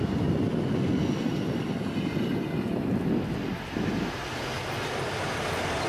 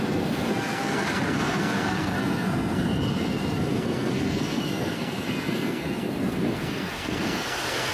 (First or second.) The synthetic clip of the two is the second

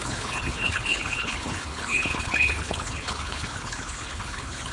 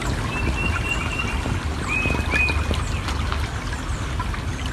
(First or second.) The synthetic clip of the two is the first